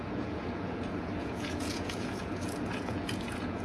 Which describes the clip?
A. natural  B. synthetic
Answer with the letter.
B